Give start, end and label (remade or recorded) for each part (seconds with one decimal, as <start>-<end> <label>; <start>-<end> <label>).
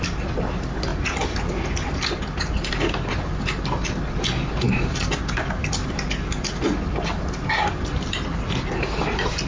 0.0-9.5 recorded